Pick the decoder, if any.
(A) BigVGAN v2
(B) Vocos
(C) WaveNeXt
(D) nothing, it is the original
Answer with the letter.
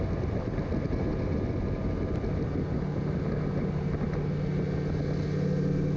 D